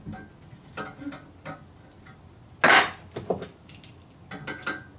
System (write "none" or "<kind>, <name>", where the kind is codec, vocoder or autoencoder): none